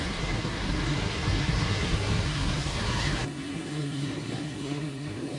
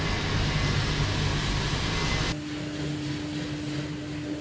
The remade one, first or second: first